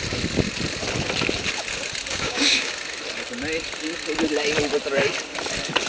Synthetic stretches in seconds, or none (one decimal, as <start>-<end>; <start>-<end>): 2.1-2.7